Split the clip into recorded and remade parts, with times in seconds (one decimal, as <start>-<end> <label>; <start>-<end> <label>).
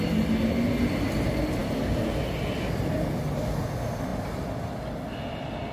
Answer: 0.0-5.7 recorded